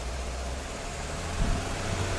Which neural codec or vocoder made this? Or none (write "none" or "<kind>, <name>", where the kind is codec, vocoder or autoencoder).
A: vocoder, BigVGAN v2